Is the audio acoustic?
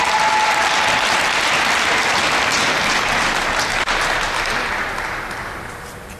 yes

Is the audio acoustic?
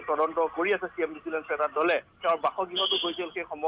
yes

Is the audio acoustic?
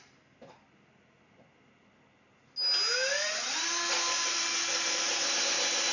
yes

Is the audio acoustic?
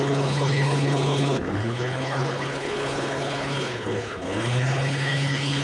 no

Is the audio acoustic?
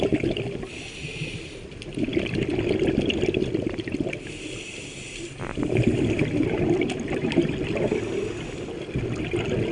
yes